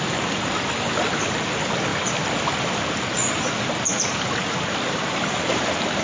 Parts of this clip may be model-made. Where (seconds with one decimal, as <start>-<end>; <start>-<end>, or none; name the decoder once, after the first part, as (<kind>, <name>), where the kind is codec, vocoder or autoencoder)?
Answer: none